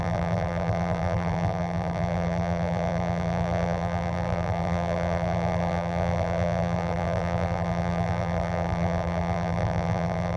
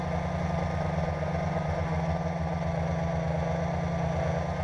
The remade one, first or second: first